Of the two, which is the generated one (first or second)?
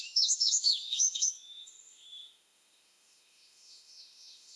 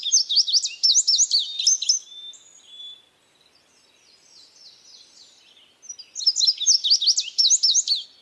first